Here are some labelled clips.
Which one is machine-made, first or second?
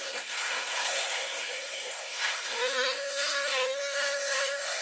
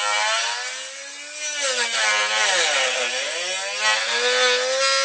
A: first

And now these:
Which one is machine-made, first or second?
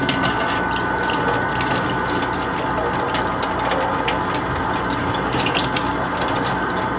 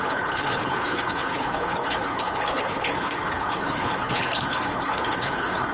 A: second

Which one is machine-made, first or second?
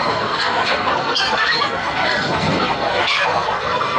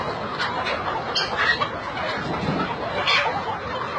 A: first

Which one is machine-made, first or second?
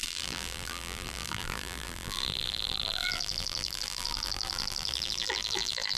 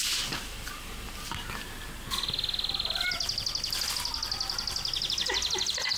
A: first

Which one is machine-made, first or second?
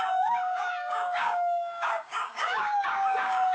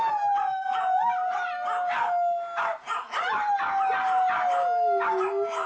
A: first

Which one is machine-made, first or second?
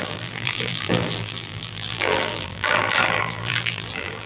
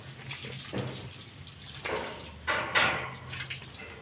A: first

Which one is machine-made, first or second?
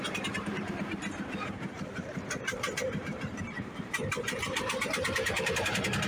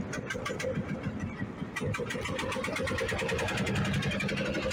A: first